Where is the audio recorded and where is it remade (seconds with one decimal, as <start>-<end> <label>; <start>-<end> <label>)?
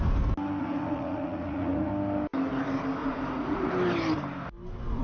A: 0.0-0.6 recorded; 0.6-1.9 remade; 1.9-3.0 recorded; 3.0-3.7 remade; 3.7-5.0 recorded